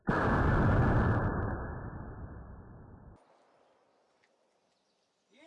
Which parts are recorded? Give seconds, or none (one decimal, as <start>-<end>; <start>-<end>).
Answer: 0.0-5.5